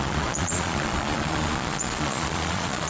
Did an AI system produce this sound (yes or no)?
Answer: yes